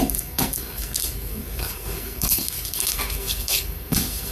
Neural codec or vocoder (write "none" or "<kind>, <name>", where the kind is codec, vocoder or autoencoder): codec, SNAC